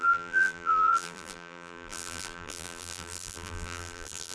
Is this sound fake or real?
fake